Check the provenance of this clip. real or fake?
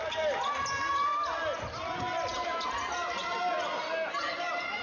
real